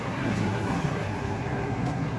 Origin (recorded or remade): remade